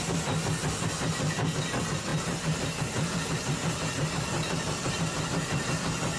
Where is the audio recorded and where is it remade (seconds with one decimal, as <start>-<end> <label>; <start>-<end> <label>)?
0.0-2.1 recorded; 2.1-5.0 remade; 5.0-6.2 recorded